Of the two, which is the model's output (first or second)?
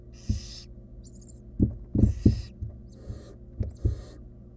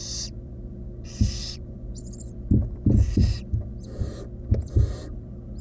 second